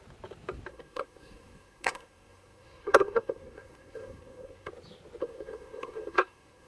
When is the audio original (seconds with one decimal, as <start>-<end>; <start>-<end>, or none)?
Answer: 0.0-0.7; 4.7-5.2